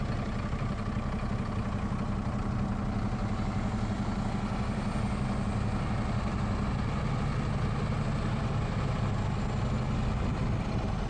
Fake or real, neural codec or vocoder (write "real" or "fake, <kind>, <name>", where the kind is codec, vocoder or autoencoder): real